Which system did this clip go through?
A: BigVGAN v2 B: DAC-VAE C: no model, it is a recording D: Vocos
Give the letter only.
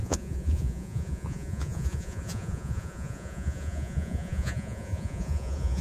D